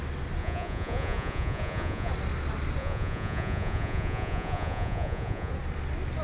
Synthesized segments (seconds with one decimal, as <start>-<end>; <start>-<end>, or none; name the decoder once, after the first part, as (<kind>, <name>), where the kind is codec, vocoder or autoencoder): 0.4-2.1 (vocoder, Vocos); 2.8-5.5